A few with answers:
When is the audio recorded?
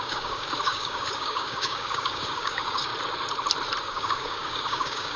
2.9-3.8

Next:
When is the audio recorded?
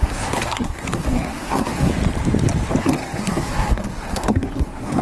1.9-2.8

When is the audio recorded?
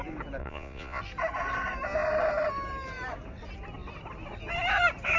0.0-0.4; 1.0-5.2